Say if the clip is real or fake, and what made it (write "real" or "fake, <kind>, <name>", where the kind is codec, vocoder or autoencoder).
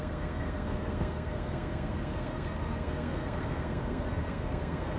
fake, codec, SNAC